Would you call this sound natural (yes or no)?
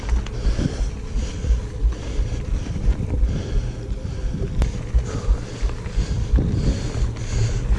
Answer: yes